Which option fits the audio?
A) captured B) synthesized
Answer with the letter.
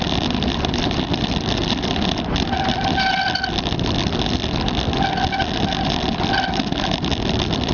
A